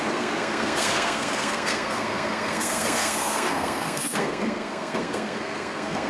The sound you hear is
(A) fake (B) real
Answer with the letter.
A